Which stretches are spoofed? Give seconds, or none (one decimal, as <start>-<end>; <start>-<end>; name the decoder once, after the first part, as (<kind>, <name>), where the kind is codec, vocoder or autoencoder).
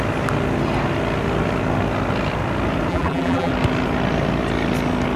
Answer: 2.9-3.5 (vocoder, BigVGAN v2)